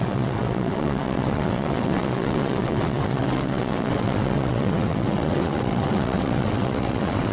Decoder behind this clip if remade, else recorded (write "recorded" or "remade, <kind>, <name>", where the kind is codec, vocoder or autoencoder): remade, vocoder, WaveNeXt